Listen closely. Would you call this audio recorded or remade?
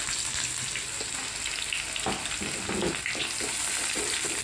recorded